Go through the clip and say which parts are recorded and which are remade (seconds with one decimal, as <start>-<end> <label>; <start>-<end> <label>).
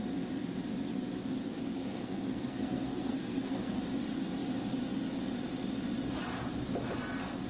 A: 0.0-1.7 recorded; 1.7-3.8 remade; 3.8-7.5 recorded